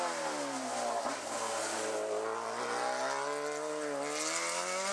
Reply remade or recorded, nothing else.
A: recorded